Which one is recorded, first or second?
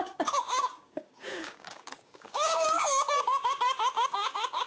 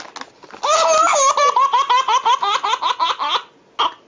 second